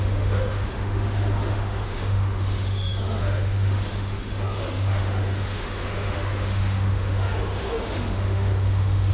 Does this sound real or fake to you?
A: fake